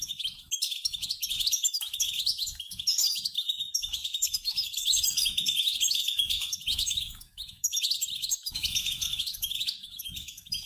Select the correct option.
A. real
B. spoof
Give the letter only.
B